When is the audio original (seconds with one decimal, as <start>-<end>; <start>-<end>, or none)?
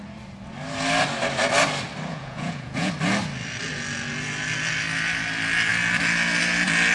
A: 0.0-2.1; 2.9-6.9